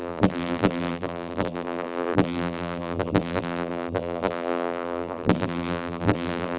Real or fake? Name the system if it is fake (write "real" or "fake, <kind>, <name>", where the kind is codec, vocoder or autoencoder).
fake, vocoder, BigVGAN v2